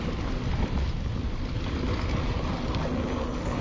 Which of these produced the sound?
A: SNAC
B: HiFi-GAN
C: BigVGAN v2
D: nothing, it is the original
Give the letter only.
D